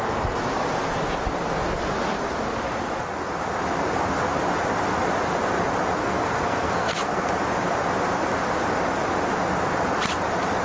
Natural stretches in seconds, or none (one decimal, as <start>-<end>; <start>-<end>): 0.0-6.0; 7.3-10.6